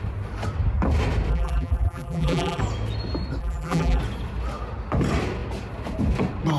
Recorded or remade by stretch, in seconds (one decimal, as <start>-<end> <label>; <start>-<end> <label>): 0.0-1.3 recorded; 1.3-2.6 remade; 2.6-3.4 recorded; 3.4-4.0 remade; 4.0-6.6 recorded